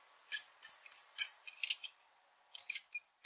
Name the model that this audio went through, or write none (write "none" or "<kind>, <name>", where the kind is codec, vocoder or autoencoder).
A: none